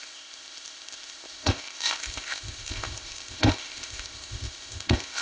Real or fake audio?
fake